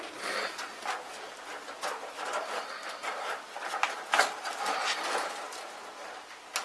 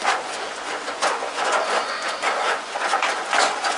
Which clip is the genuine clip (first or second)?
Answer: first